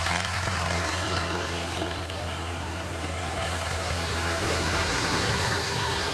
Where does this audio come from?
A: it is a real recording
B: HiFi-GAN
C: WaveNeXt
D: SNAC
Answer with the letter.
D